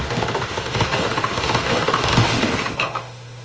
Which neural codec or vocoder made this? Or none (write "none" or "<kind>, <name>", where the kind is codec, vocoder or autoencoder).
autoencoder, DAC-VAE